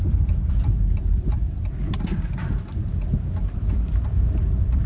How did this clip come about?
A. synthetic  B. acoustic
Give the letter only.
A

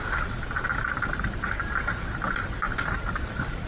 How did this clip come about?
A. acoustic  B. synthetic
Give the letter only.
A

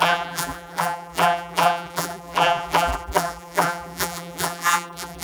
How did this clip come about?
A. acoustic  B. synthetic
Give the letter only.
B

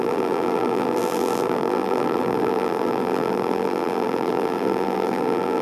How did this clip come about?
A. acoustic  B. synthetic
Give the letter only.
B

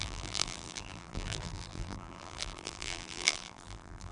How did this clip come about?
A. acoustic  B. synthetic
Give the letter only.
B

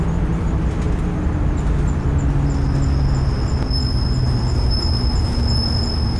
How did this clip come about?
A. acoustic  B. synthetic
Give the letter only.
A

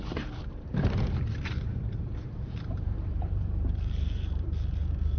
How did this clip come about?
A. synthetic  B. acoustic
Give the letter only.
A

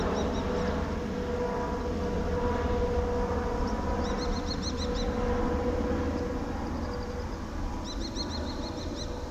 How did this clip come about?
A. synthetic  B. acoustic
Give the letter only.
B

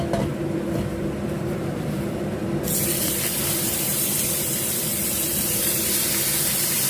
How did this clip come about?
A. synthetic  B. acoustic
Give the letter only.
A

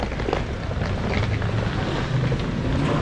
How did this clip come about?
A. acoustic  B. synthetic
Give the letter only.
A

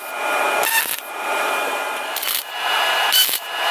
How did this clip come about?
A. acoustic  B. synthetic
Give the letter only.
A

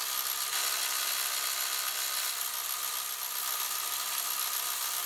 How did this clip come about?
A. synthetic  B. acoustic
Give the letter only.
B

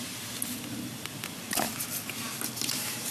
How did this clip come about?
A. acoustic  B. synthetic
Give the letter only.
A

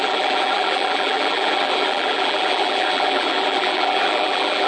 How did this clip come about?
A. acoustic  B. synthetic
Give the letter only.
B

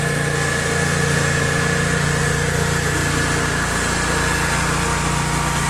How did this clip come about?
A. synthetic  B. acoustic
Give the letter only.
B